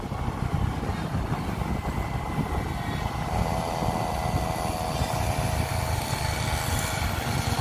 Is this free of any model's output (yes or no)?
yes